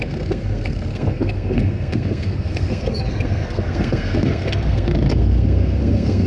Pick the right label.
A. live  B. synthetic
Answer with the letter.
B